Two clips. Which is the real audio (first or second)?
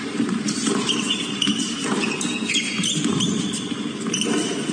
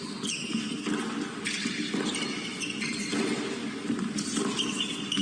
second